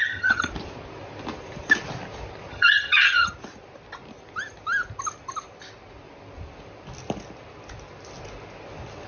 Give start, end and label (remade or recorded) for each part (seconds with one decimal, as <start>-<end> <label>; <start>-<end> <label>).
0.0-0.5 remade; 0.5-2.5 recorded; 2.5-3.3 remade; 3.3-9.1 recorded